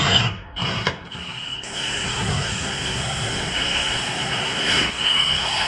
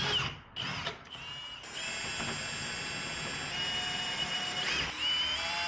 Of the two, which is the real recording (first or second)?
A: second